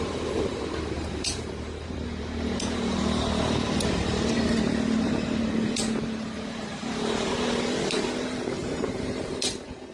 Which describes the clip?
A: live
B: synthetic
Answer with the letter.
B